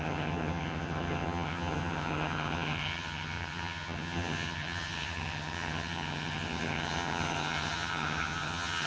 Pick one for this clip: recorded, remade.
remade